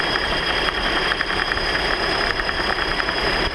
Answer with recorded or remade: remade